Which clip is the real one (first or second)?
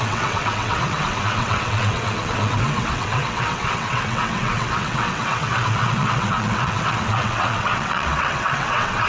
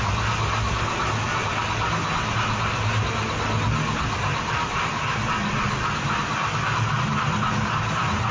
second